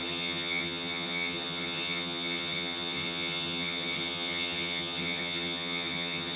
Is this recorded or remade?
remade